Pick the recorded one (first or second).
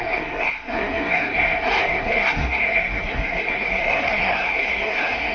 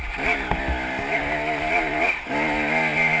second